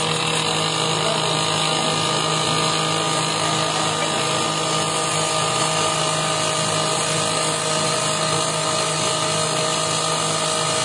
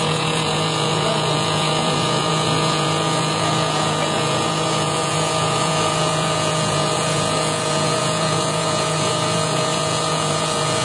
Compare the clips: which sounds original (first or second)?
first